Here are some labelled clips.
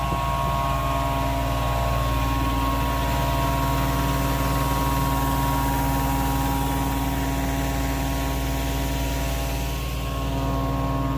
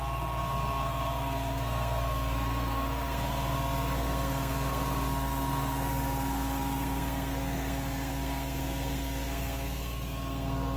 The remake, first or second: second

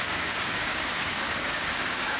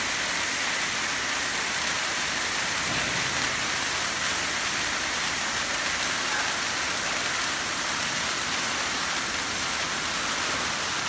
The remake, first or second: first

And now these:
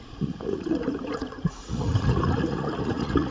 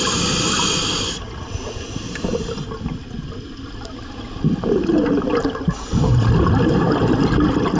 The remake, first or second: first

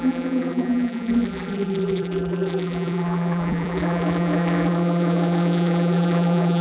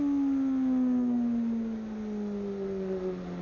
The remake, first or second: first